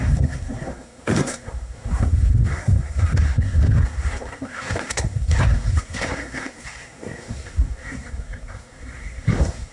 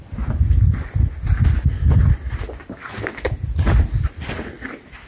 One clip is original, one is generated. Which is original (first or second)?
second